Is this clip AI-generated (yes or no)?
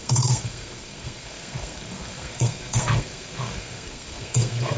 yes